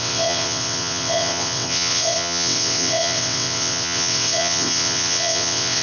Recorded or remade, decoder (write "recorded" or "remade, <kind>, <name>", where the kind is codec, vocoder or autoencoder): remade, vocoder, WaveNeXt